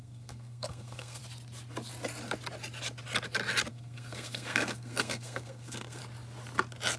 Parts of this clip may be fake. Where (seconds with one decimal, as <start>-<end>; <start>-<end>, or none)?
0.0-1.2; 3.7-6.0